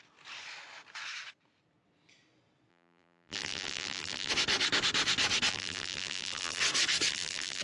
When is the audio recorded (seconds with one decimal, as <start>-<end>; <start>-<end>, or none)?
0.0-2.7; 4.3-5.5; 6.6-7.1